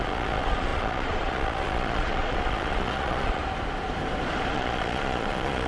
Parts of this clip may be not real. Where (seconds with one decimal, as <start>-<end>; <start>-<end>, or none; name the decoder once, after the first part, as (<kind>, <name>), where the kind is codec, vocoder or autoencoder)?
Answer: 0.0-3.4 (vocoder, Vocos); 4.5-5.7